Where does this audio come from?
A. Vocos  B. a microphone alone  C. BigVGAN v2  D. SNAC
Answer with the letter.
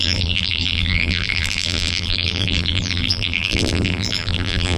C